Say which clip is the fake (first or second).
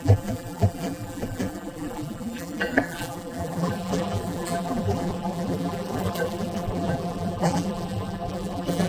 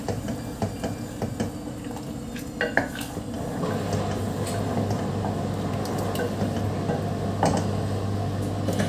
first